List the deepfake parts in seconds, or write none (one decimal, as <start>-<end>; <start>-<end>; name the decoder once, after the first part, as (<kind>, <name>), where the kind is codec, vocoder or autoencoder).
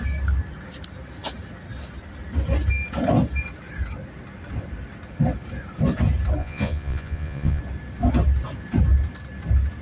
6.4-7.6 (vocoder, Vocos)